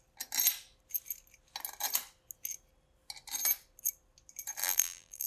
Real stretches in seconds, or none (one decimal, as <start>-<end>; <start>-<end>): 0.0-4.6